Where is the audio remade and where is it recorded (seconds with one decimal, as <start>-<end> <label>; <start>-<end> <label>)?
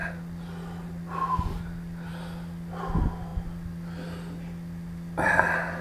0.0-5.8 recorded